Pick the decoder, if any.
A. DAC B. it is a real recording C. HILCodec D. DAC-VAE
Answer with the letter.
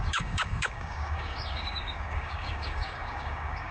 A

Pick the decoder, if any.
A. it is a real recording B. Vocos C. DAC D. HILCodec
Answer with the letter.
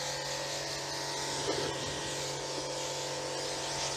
A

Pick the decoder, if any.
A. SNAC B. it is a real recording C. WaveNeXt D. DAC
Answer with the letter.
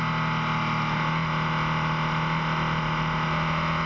B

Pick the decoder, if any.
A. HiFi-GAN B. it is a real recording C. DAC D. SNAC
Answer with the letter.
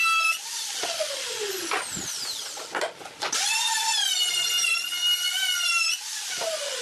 B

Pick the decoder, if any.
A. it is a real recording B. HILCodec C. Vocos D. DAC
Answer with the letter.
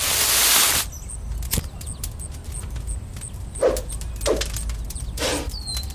A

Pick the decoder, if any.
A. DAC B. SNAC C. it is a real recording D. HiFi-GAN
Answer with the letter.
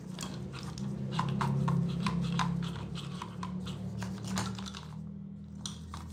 C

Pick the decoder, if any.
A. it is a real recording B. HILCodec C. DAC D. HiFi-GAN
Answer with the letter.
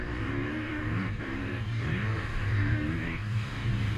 C